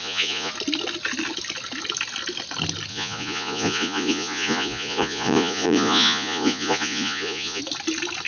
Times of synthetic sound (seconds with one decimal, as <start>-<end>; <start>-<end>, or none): 0.0-0.5; 2.9-7.6